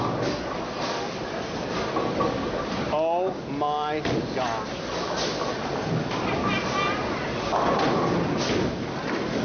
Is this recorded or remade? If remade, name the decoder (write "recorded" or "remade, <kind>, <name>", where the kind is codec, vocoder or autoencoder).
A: recorded